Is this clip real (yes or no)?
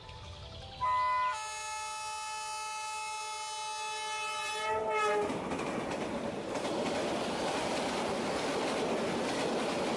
yes